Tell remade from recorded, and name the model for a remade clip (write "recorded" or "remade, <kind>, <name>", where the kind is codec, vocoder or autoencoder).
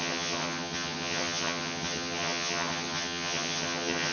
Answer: remade, vocoder, HiFi-GAN